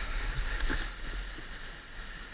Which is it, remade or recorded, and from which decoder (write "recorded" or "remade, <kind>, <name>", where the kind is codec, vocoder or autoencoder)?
recorded